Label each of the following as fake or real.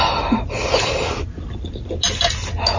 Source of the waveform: real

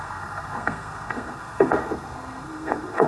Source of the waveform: fake